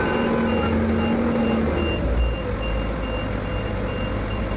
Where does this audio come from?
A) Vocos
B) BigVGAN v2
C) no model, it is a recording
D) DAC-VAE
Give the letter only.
C